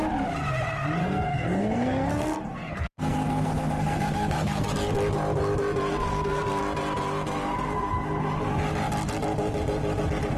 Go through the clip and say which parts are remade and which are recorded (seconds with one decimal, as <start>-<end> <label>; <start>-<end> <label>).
0.0-1.0 recorded; 1.0-4.7 remade; 4.7-5.9 recorded; 5.9-6.6 remade; 6.6-10.4 recorded